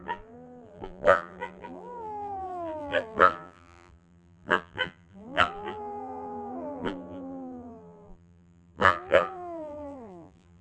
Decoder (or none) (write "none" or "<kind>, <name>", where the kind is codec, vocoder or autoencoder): vocoder, BigVGAN v2